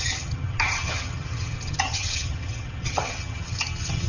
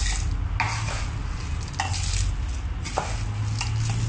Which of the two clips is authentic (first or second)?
second